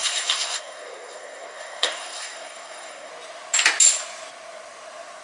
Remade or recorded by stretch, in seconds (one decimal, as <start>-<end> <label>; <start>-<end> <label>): 0.0-3.1 remade; 3.1-5.2 recorded